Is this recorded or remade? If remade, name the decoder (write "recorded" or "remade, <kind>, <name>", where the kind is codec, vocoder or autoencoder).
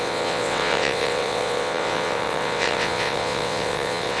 remade, vocoder, WaveNeXt